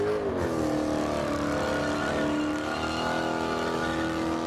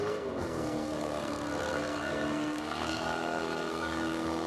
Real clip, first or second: first